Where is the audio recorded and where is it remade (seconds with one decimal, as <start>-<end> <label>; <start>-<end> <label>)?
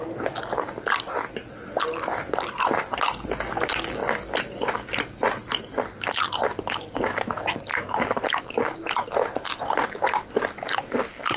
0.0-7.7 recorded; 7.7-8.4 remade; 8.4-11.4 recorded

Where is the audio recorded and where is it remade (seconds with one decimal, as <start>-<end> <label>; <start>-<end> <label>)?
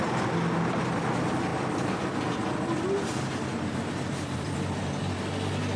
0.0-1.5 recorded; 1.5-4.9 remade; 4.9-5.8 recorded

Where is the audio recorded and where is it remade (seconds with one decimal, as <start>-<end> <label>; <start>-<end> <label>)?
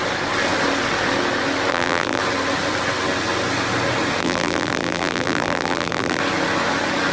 0.0-1.7 recorded; 1.7-2.2 remade; 2.2-4.2 recorded; 4.2-6.2 remade; 6.2-7.1 recorded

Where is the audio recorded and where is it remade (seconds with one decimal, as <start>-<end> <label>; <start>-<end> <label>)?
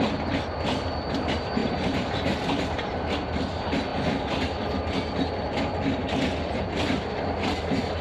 0.0-1.6 recorded; 1.6-3.1 remade; 3.1-8.0 recorded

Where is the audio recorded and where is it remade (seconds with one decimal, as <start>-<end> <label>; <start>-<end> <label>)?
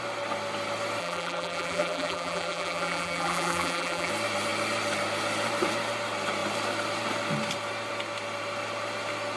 0.0-1.0 recorded; 1.0-4.1 remade; 4.1-9.4 recorded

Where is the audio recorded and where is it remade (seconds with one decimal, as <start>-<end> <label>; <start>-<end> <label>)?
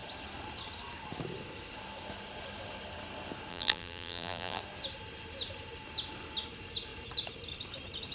0.0-3.5 recorded; 3.5-4.6 remade; 4.6-8.1 recorded